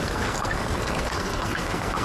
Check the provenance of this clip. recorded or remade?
remade